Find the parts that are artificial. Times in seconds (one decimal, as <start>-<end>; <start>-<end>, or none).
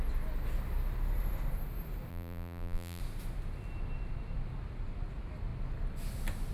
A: 2.1-3.0